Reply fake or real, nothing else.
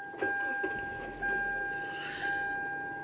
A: real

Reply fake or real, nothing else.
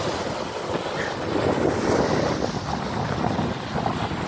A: real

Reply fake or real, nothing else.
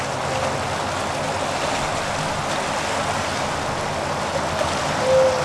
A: real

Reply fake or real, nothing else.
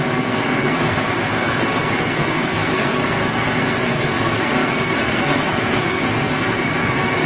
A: fake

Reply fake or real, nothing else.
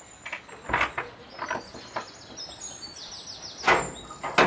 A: real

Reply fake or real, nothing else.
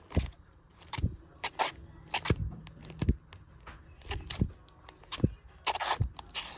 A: real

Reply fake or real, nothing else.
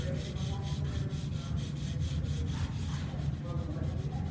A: real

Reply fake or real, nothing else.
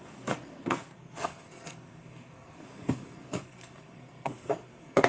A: fake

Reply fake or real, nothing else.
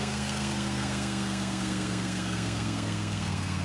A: fake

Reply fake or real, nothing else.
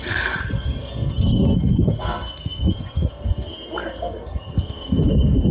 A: fake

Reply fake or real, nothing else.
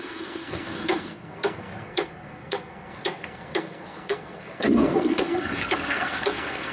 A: fake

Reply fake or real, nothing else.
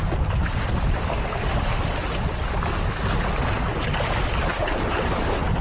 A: real